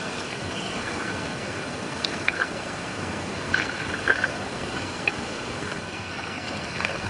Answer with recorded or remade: remade